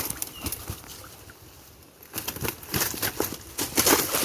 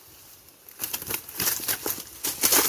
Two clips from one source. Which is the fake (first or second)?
second